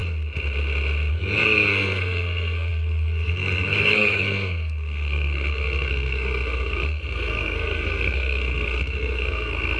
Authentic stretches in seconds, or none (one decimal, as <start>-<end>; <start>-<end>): 0.0-1.1